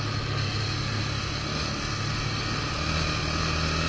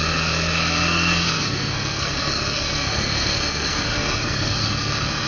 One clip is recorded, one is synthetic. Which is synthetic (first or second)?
second